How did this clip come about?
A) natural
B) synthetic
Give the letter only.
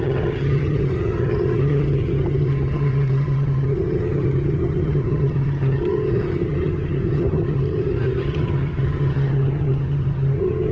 B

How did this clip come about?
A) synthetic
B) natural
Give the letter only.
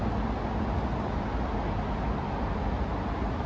B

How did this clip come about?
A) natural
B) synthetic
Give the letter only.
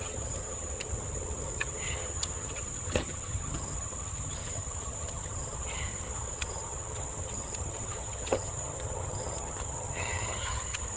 B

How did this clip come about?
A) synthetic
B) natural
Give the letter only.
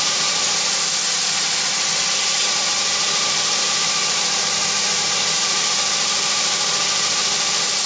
B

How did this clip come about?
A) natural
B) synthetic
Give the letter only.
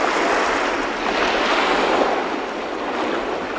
A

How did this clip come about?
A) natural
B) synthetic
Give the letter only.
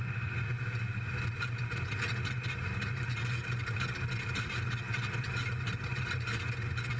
A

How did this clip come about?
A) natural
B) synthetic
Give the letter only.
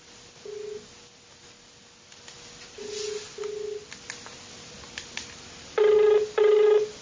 A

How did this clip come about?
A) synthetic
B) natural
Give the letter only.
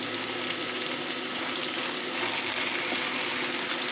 B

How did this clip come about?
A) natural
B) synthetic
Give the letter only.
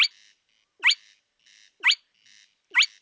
A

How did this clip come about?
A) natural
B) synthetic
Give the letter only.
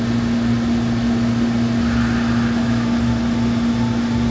A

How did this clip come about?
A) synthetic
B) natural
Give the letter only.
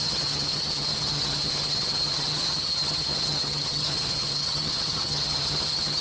A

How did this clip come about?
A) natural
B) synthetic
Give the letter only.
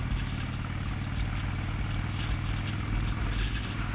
A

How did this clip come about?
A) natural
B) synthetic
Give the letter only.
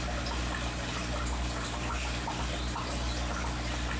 A